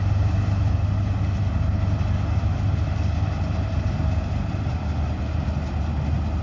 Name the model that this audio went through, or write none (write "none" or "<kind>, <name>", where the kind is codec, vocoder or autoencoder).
none